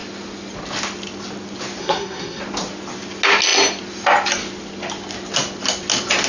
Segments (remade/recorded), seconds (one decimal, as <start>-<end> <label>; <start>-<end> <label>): 0.0-1.8 recorded; 1.8-2.4 remade; 2.4-6.3 recorded